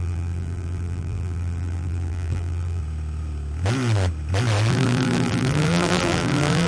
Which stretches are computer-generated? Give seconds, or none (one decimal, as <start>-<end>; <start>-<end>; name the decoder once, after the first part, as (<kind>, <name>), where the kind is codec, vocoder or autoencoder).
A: 0.0-2.8 (vocoder, BigVGAN v2); 4.7-6.7